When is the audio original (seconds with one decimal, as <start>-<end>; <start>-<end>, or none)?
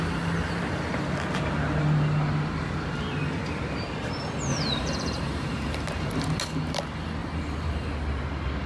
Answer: 0.0-4.5; 6.4-7.2; 7.9-8.7